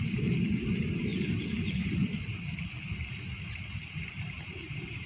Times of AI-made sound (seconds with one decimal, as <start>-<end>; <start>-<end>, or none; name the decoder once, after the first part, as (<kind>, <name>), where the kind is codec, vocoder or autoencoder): 0.0-1.1 (vocoder, BigVGAN v2); 4.2-5.1

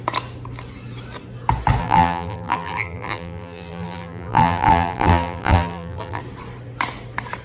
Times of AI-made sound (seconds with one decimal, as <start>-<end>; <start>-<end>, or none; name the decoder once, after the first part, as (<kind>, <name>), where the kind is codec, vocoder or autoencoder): 1.8-6.2 (vocoder, BigVGAN v2)

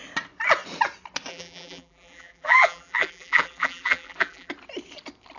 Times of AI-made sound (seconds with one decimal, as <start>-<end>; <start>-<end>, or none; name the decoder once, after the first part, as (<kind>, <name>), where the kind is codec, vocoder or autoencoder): 1.3-4.5 (vocoder, BigVGAN v2)

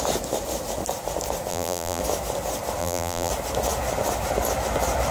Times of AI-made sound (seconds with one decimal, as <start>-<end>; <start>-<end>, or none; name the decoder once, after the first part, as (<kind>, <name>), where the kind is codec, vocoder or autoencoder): 1.5-2.0 (vocoder, BigVGAN v2); 2.8-3.3

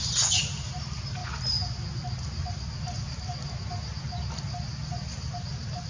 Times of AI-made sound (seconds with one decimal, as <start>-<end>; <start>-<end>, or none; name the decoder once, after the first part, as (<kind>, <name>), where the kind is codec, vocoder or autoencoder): none

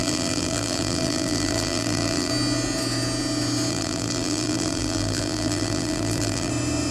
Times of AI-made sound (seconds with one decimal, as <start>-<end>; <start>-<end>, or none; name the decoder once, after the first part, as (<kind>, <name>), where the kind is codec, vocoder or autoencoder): 0.0-2.3 (vocoder, BigVGAN v2); 3.7-6.5

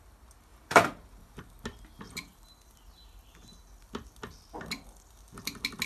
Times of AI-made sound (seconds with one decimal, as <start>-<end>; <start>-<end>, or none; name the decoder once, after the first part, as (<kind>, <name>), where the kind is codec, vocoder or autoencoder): 0.5-1.4 (vocoder, BigVGAN v2)

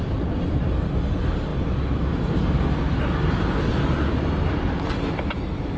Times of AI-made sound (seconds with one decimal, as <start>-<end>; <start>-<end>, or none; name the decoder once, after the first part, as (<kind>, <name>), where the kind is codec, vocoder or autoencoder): none